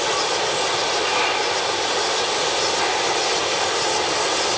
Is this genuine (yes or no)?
yes